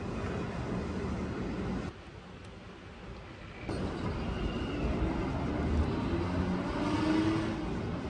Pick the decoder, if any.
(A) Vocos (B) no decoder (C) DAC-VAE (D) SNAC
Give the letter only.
B